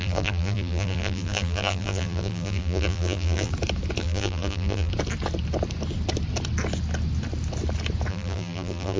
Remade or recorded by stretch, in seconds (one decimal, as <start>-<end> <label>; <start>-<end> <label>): 0.0-3.5 remade; 3.5-4.0 recorded; 4.0-4.9 remade; 4.9-8.1 recorded; 8.1-9.0 remade